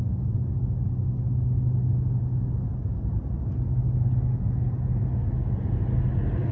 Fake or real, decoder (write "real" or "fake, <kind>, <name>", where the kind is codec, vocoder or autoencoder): real